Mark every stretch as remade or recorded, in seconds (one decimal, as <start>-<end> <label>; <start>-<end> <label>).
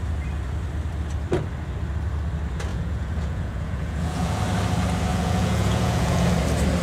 0.0-2.7 recorded; 2.7-4.4 remade; 4.4-5.1 recorded; 5.1-6.3 remade; 6.3-6.8 recorded